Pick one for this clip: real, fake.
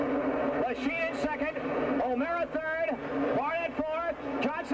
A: real